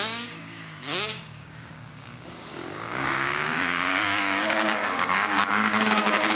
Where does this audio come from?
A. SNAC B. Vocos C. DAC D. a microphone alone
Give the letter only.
C